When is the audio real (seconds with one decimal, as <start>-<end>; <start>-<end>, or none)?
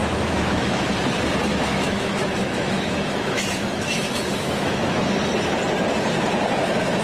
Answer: 0.9-1.5; 5.1-7.0